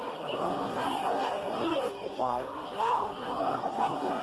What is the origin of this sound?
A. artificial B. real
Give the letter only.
A